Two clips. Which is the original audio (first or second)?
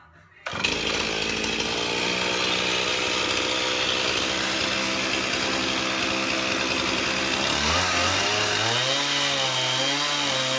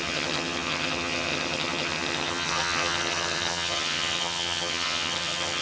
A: first